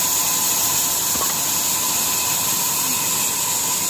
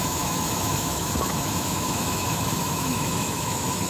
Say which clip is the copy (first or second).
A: second